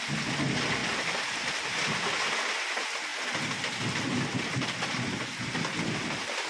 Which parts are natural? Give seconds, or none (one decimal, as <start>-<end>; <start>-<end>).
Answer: 0.0-6.5